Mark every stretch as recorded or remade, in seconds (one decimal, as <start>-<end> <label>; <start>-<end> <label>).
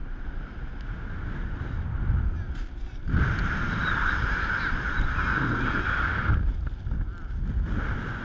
0.0-3.8 recorded; 3.8-4.5 remade; 4.5-8.2 recorded